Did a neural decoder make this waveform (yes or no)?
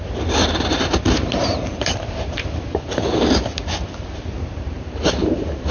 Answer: yes